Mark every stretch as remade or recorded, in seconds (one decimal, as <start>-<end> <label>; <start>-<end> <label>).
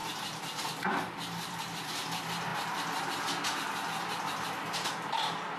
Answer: 0.0-1.6 remade; 1.6-5.6 recorded